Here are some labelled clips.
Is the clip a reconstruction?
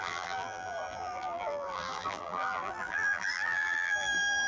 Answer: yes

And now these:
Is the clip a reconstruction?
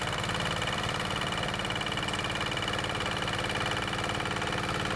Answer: no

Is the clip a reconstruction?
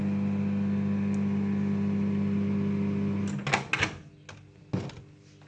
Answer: no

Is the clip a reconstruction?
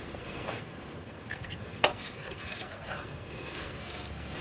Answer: yes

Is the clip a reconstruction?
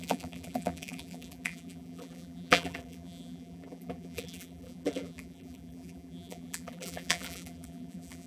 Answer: yes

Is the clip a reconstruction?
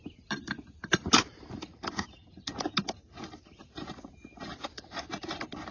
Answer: yes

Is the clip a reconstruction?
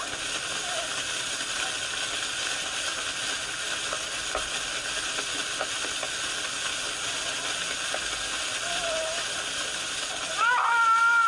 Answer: no